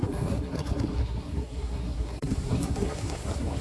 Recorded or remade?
remade